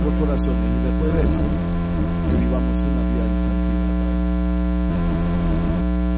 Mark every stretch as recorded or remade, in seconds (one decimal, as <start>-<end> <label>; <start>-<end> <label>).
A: 0.0-1.1 recorded; 1.1-2.4 remade; 2.4-4.9 recorded; 4.9-5.8 remade; 5.8-6.2 recorded

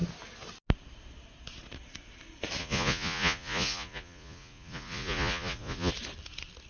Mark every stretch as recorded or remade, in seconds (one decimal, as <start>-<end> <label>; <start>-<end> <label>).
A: 0.0-2.6 recorded; 2.6-5.9 remade; 5.9-6.7 recorded

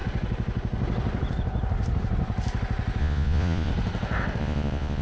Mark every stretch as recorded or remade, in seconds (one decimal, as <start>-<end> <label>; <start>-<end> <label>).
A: 0.0-3.0 recorded; 3.0-3.7 remade; 3.7-4.4 recorded; 4.4-5.0 remade

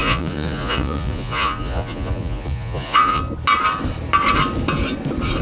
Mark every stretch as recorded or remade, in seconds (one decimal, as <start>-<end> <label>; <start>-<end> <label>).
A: 0.0-3.2 remade; 3.2-5.4 recorded

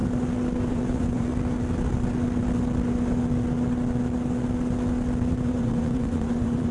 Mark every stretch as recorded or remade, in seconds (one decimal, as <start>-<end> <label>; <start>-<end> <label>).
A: 0.0-0.7 recorded; 0.7-1.3 remade; 1.3-5.3 recorded; 5.3-6.7 remade